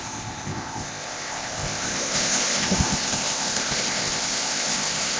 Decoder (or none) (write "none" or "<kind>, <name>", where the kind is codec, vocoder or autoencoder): codec, ZipCodec